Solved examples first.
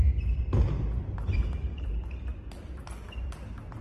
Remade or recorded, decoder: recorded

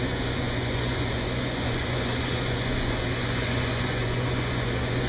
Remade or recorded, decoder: remade, vocoder, Vocos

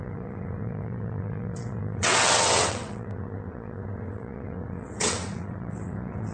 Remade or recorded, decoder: remade, vocoder, WaveNeXt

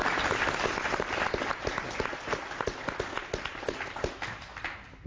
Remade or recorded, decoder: recorded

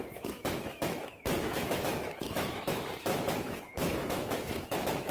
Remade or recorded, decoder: remade, autoencoder, DAC-VAE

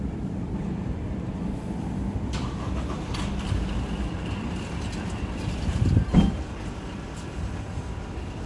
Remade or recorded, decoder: recorded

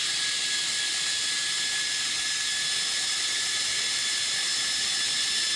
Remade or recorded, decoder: recorded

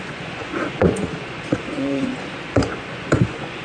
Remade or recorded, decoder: remade, vocoder, Vocos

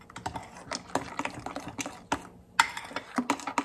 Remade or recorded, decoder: recorded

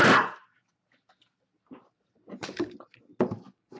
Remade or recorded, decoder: recorded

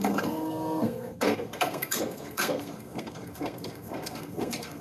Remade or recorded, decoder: remade, codec, SNAC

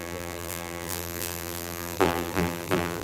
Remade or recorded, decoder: remade, vocoder, BigVGAN v2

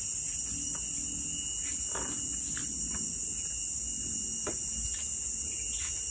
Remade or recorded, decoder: recorded